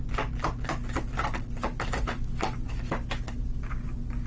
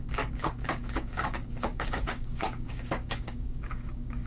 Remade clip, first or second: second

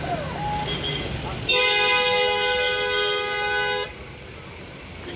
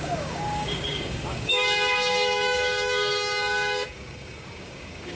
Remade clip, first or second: second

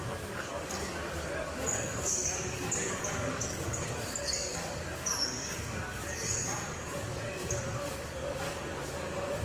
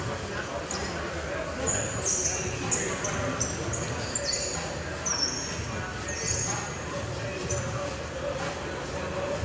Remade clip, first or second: first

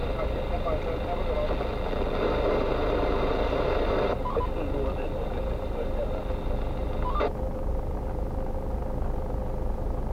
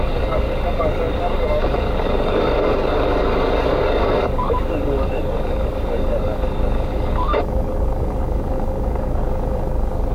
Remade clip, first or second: second